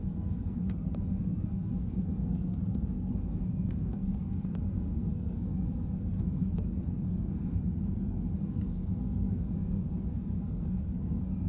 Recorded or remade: remade